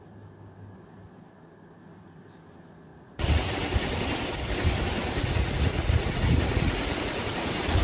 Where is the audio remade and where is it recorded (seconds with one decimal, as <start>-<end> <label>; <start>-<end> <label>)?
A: 0.0-2.9 recorded; 2.9-3.5 remade; 3.5-5.0 recorded; 5.0-7.8 remade